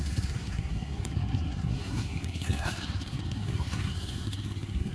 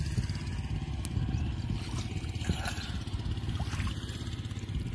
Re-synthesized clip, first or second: first